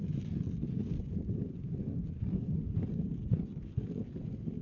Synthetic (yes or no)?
no